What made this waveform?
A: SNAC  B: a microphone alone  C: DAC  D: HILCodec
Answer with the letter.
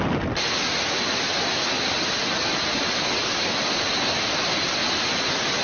B